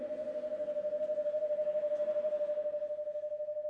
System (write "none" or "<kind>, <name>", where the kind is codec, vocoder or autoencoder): vocoder, BigVGAN v2